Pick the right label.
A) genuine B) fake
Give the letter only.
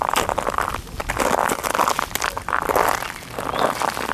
A